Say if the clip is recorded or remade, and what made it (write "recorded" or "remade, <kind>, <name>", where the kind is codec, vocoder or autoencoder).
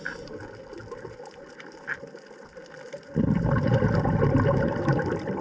recorded